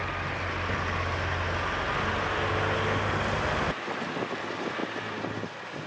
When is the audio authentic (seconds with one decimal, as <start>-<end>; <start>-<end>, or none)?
0.0-5.9